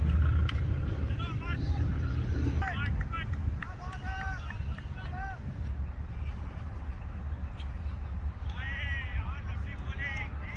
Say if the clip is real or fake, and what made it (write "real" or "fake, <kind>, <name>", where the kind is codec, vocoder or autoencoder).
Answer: real